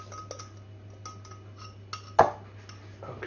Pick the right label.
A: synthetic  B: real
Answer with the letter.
B